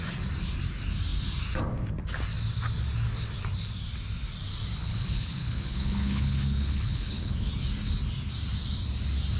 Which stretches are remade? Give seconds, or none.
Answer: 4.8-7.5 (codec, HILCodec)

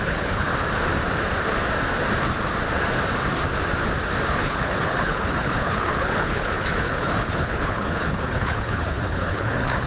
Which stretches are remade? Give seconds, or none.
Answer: 0.0-0.5 (codec, HILCodec); 4.3-9.9

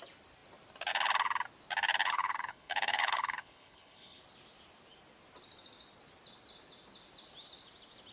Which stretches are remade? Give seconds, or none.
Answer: 2.0-4.2 (codec, HILCodec)